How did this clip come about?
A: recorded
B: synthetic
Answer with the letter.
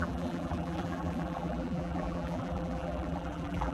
B